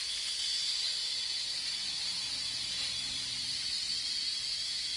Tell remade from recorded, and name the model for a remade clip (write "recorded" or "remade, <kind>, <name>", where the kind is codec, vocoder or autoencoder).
recorded